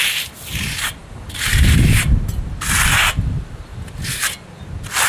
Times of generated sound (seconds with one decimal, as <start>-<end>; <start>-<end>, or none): 1.0-2.0